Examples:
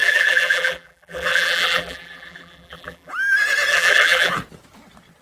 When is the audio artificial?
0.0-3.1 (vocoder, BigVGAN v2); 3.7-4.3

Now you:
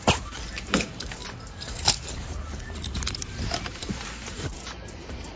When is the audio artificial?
0.0-5.4 (vocoder, BigVGAN v2)

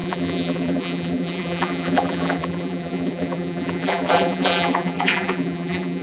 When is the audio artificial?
0.0-6.0 (vocoder, BigVGAN v2)

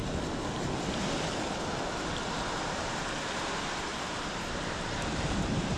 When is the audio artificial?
3.9-5.8 (vocoder, BigVGAN v2)